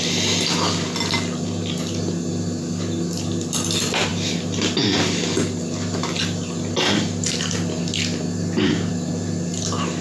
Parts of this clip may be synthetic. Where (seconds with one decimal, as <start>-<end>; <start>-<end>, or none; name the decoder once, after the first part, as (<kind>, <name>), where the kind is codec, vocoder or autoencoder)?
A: none